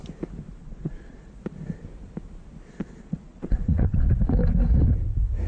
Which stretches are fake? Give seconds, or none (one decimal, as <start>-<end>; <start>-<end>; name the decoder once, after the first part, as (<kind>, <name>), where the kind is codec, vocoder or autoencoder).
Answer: 0.6-1.4 (vocoder, Vocos); 2.8-4.1